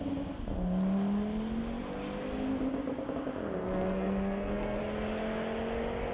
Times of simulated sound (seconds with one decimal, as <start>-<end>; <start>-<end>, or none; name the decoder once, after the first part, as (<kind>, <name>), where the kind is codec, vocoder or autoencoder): 3.6-4.8 (codec, SNAC)